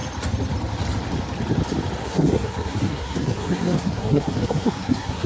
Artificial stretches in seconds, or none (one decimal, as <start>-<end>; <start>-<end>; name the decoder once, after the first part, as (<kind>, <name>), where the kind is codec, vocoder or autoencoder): 2.0-5.3 (codec, SNAC)

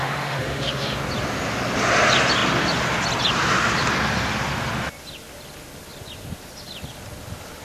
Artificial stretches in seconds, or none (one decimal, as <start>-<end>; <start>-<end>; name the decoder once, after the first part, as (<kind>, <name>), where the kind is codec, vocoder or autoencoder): 0.0-1.0 (autoencoder, DAC-VAE)

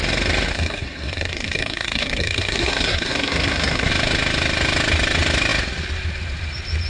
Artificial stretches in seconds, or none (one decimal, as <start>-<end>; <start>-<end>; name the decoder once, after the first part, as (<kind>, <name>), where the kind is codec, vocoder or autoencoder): 0.5-3.9 (codec, SNAC)

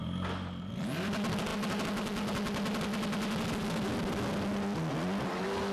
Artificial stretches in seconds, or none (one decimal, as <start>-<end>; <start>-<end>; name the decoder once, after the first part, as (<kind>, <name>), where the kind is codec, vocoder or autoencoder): none

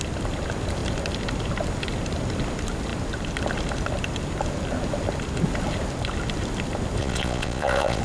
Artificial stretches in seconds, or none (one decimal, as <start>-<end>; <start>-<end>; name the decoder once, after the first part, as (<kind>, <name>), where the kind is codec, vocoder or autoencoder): 7.0-8.0 (vocoder, Vocos)